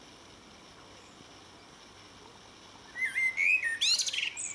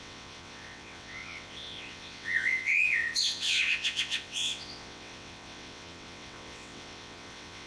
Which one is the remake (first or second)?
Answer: second